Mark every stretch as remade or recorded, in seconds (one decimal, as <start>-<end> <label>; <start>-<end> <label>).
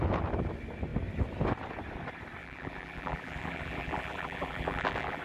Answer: 0.0-2.4 recorded; 2.4-5.2 remade